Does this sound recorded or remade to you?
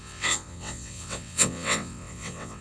remade